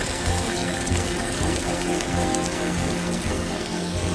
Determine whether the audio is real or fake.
fake